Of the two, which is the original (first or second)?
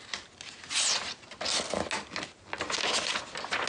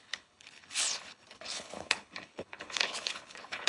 first